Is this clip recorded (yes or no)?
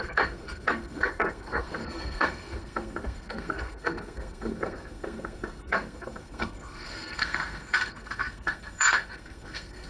no